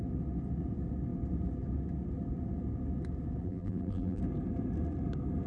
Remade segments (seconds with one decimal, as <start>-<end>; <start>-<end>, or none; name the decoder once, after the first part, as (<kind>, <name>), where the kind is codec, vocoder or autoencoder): 3.4-4.2 (vocoder, BigVGAN v2)